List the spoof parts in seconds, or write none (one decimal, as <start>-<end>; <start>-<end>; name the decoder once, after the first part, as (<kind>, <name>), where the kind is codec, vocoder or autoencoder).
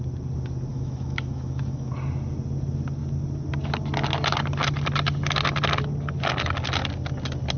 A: 0.7-1.9 (autoencoder, DAC-VAE)